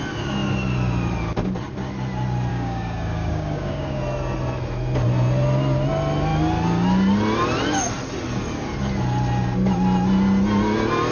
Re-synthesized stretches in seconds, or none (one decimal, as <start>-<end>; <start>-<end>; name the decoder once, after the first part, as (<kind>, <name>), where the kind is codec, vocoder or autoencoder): 2.5-4.0 (codec, DAC)